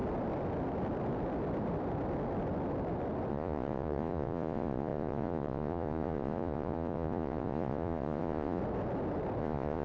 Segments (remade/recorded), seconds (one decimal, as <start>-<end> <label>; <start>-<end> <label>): 0.0-3.3 recorded; 3.3-8.6 remade; 8.6-9.4 recorded; 9.4-9.8 remade